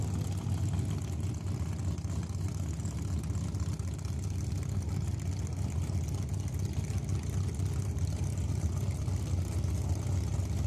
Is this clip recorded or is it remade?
recorded